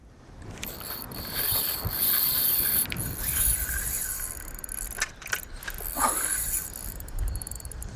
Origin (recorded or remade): remade